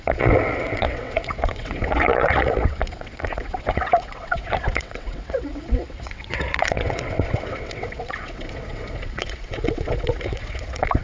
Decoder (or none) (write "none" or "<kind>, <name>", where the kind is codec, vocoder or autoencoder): vocoder, WaveNeXt